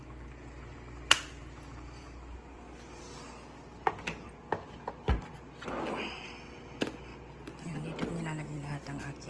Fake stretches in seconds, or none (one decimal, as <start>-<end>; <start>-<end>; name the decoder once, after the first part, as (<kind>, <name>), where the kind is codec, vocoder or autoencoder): none